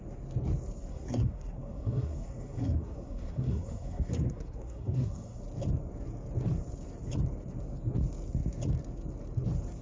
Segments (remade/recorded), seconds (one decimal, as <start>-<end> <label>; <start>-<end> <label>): 0.0-0.9 recorded; 0.9-5.4 remade; 5.4-9.8 recorded